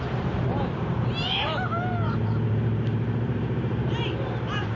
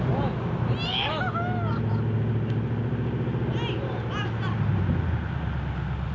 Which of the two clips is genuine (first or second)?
second